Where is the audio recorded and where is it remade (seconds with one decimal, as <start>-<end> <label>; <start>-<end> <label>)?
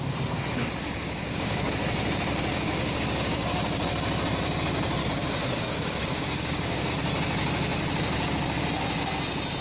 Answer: 0.0-0.8 recorded; 0.8-1.7 remade; 1.7-2.5 recorded; 2.5-3.8 remade; 3.8-5.0 recorded; 5.0-6.9 remade; 6.9-9.6 recorded